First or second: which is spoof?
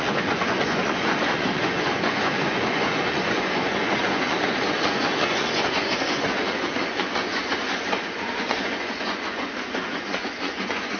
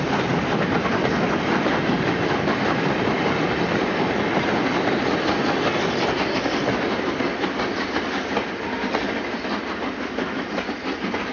first